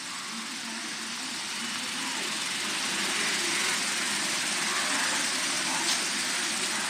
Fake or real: real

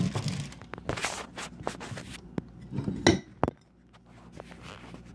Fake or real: real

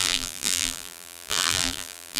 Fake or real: fake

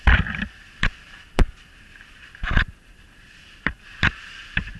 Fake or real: fake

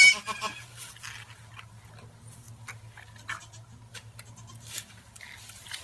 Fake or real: real